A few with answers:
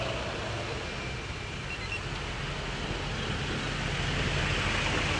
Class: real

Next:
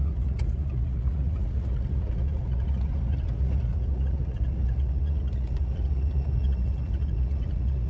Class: fake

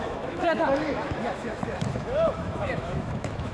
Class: fake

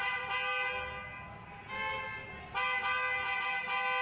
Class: real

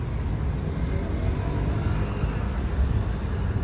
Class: real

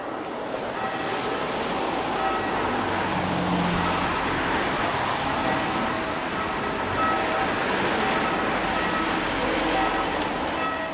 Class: real